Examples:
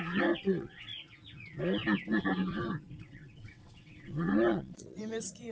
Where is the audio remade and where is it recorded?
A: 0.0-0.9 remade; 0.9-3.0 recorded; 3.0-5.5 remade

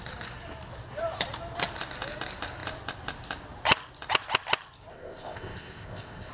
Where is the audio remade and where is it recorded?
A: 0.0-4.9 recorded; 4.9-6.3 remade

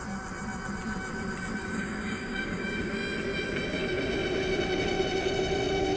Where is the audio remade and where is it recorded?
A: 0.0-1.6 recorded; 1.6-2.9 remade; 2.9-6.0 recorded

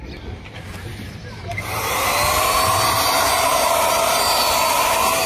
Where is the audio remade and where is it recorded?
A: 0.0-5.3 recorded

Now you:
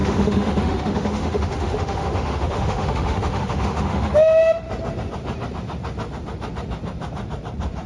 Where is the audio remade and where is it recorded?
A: 0.0-4.1 remade; 4.1-7.9 recorded

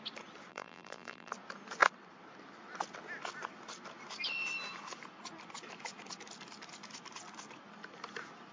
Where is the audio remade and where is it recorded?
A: 0.0-0.5 recorded; 0.5-1.3 remade; 1.3-8.5 recorded

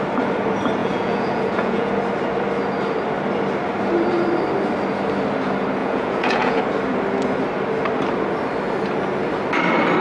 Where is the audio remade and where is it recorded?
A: 0.0-0.8 recorded; 0.8-1.9 remade; 1.9-5.8 recorded; 5.8-6.6 remade; 6.6-10.0 recorded